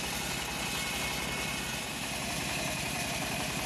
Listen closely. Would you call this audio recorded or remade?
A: recorded